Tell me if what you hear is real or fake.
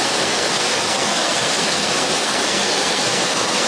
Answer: fake